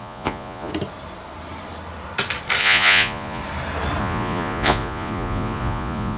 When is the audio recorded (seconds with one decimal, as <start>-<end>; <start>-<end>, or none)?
0.7-2.6; 3.4-4.0